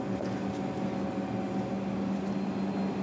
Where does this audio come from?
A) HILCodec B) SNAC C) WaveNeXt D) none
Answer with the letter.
D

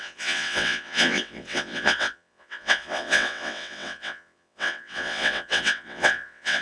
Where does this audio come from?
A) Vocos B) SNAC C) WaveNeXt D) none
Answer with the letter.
C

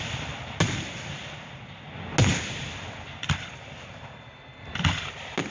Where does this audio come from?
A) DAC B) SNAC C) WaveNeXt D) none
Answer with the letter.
D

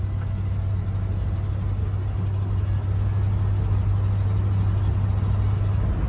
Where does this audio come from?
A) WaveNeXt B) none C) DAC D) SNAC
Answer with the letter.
B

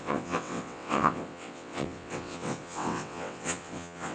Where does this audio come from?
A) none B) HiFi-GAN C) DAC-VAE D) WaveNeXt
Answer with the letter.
D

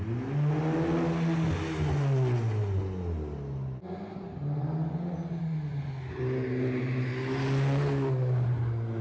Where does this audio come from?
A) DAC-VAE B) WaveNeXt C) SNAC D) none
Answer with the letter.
D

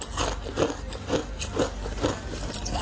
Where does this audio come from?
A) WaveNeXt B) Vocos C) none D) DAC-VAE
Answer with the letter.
C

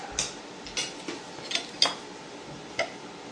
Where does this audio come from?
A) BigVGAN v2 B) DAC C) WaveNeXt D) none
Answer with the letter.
D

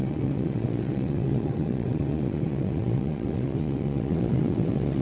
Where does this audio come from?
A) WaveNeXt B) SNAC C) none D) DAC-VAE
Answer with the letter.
A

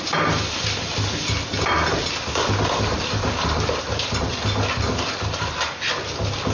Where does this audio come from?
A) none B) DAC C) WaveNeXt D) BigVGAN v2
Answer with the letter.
A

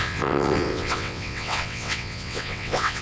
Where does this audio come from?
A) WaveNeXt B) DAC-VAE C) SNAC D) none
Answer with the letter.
A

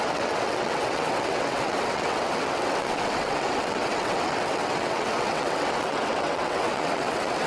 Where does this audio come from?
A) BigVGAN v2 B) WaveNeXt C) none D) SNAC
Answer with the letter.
B